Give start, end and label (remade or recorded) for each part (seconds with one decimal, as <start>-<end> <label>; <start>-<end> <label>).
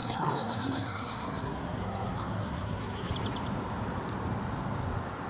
0.0-3.1 remade; 3.1-5.3 recorded